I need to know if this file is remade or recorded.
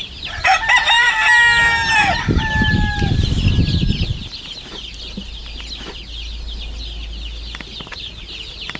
recorded